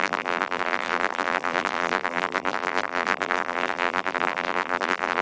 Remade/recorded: remade